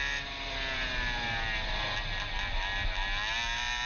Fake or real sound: real